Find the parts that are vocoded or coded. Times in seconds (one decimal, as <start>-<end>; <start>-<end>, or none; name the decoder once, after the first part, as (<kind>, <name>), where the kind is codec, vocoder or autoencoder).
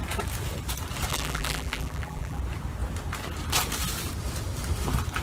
1.1-2.4 (vocoder, BigVGAN v2)